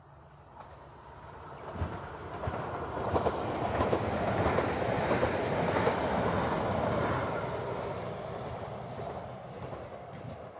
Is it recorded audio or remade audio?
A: remade